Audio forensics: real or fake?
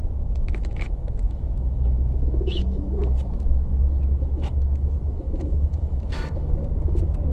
fake